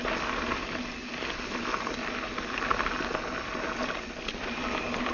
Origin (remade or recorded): recorded